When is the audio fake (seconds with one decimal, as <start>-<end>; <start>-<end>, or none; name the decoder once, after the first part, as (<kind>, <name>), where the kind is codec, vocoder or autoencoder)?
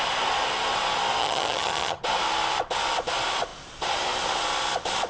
1.2-2.0 (vocoder, HiFi-GAN)